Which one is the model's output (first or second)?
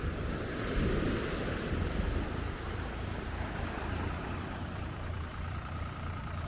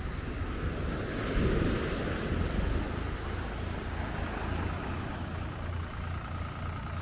first